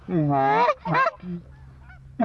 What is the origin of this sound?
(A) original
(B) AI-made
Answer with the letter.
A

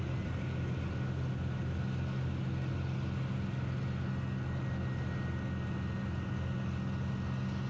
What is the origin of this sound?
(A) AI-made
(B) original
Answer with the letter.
B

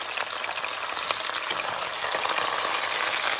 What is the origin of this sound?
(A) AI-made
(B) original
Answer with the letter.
B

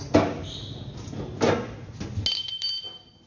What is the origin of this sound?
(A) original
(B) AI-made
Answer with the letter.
A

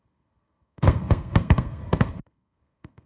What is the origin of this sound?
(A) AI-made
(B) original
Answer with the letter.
A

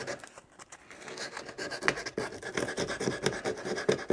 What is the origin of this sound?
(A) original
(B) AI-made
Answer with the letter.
A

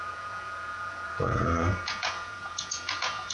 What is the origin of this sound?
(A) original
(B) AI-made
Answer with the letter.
B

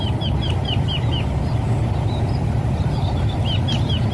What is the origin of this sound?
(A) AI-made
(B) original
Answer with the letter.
B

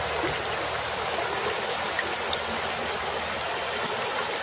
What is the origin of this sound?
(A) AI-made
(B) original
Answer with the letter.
B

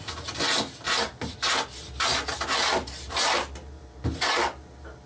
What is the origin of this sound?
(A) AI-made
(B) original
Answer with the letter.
B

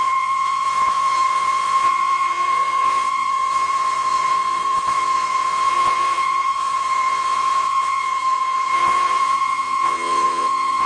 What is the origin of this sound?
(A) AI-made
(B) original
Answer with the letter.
A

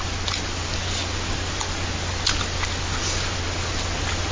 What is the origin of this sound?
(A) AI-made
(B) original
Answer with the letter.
B